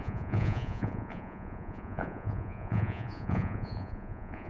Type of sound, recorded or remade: remade